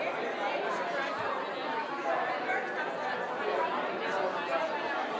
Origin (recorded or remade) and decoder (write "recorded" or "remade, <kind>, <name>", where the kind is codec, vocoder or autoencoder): recorded